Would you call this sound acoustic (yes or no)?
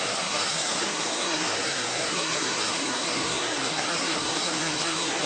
no